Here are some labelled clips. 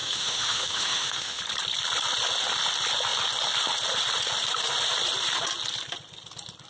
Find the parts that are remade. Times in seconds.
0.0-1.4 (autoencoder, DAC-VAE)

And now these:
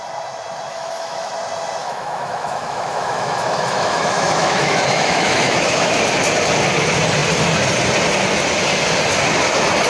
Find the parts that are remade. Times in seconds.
0.7-1.3 (autoencoder, DAC-VAE); 1.8-5.9